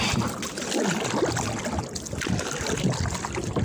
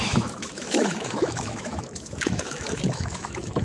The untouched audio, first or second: first